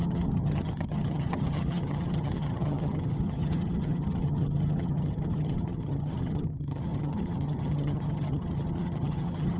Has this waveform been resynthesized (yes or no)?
yes